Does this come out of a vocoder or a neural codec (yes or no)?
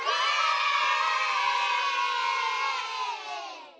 no